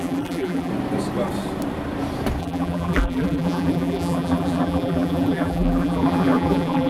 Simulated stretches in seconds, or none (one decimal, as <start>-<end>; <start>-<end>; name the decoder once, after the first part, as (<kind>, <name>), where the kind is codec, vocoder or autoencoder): 0.0-0.7 (vocoder, BigVGAN v2); 2.4-6.9